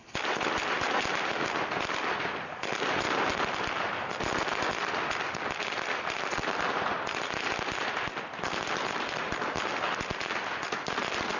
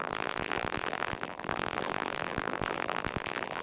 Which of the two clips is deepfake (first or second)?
second